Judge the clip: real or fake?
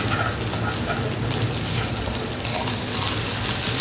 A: real